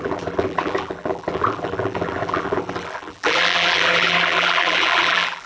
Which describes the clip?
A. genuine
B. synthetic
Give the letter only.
B